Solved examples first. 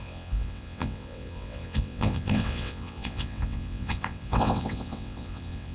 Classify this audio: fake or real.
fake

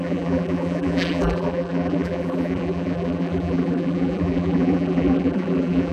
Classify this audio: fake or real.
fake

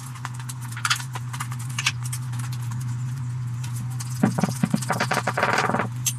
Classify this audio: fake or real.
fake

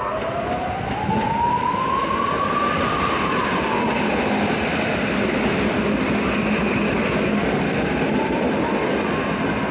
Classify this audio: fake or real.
real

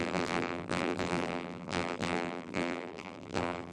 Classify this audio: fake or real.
fake